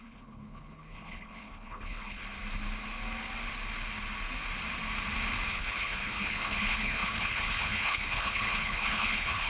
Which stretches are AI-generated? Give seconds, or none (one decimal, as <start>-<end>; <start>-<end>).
0.0-2.2; 5.5-9.5